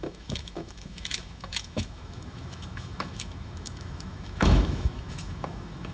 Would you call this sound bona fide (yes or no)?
no